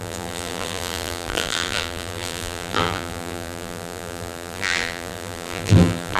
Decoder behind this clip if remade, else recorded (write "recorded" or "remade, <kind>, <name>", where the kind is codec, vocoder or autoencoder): remade, vocoder, BigVGAN v2